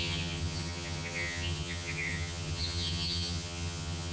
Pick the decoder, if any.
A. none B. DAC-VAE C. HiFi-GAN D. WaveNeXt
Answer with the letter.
C